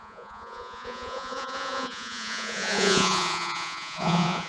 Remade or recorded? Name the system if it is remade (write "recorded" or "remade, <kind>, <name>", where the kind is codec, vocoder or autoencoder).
remade, vocoder, Vocos